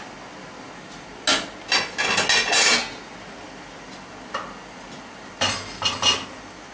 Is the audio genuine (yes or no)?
yes